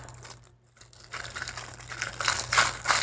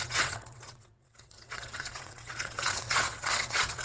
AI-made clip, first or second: second